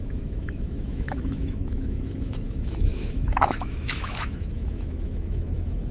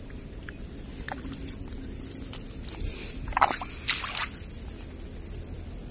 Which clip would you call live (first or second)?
second